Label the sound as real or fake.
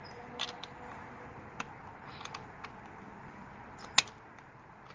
real